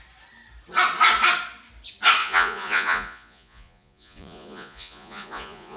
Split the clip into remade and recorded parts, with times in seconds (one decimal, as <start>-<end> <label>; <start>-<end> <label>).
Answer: 0.0-2.2 recorded; 2.2-5.8 remade